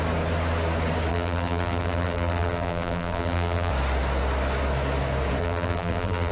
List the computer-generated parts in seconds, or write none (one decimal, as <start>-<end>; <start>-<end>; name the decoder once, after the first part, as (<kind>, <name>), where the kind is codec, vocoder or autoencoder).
1.1-3.7 (vocoder, BigVGAN v2); 5.4-6.3